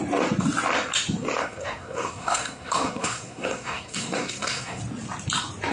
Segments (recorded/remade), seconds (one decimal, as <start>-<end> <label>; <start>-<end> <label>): 0.0-1.4 recorded; 1.4-4.8 remade; 4.8-5.7 recorded